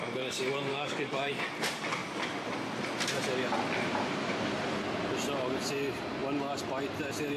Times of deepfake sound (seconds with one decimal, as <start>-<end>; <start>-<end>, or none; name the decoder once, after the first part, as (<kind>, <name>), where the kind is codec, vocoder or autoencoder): 0.7-1.3 (codec, DAC)